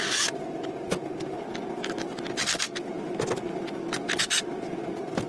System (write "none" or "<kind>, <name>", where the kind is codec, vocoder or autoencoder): none